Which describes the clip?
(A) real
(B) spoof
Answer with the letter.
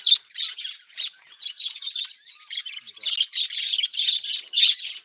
A